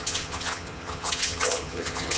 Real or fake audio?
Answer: fake